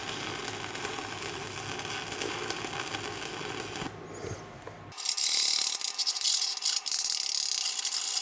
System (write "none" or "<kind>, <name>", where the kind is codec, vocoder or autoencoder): none